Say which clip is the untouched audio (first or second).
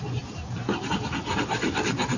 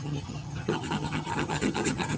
first